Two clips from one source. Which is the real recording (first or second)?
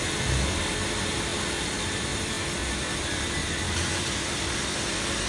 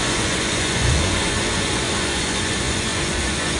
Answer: first